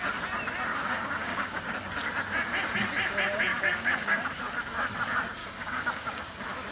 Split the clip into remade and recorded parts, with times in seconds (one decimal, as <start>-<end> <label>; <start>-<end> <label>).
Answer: 0.0-0.7 recorded; 0.7-1.6 remade; 1.6-3.5 recorded; 3.5-4.4 remade; 4.4-5.4 recorded; 5.4-6.2 remade; 6.2-6.7 recorded